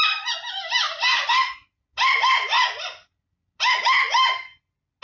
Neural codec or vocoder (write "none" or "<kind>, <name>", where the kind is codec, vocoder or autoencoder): none